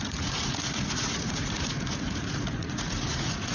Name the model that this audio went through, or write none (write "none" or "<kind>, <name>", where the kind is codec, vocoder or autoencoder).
vocoder, Vocos